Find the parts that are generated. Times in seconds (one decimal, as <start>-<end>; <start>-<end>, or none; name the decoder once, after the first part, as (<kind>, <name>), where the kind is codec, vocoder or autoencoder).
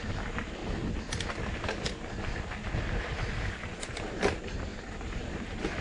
0.0-0.6 (vocoder, BigVGAN v2); 4.1-5.8